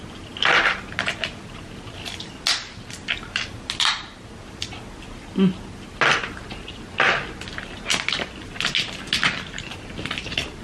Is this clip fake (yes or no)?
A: no